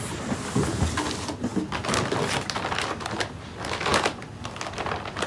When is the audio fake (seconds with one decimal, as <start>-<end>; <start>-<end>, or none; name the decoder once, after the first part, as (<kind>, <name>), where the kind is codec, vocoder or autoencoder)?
none